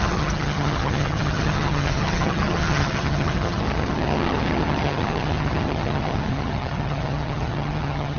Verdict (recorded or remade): remade